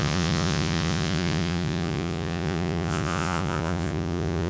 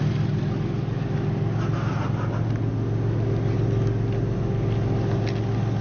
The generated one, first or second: first